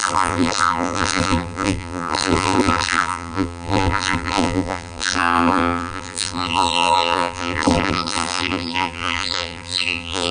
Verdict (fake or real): fake